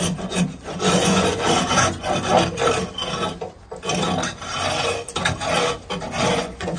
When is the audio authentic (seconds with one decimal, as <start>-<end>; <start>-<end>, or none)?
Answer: 2.3-6.3